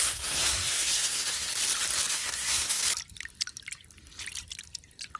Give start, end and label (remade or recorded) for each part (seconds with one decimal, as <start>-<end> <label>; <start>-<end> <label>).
0.0-1.5 remade; 1.5-2.1 recorded; 2.1-2.8 remade; 2.8-5.2 recorded